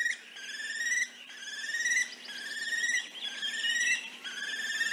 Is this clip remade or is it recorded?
recorded